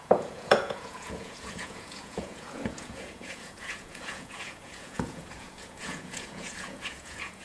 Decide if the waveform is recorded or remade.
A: remade